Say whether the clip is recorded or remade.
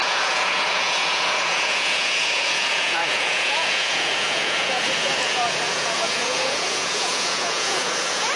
remade